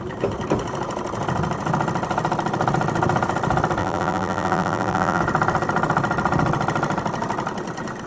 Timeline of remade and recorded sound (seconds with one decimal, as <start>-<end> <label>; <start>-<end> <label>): 0.0-3.8 recorded; 3.8-5.2 remade; 5.2-8.1 recorded